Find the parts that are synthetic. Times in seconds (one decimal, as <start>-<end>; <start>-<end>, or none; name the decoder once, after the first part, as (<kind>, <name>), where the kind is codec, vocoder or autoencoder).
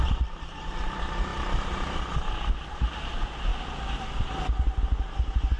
none